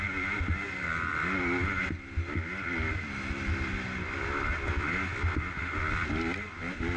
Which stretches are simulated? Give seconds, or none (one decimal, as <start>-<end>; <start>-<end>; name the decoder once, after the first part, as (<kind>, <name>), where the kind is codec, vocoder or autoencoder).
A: none